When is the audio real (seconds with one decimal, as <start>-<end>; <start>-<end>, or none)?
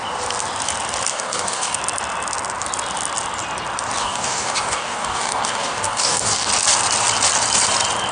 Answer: 0.0-1.1; 1.8-4.0; 6.5-8.1